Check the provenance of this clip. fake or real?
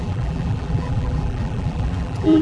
fake